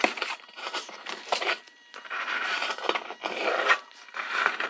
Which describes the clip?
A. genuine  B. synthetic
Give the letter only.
B